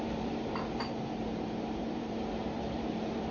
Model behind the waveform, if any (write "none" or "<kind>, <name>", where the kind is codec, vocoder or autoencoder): vocoder, BigVGAN v2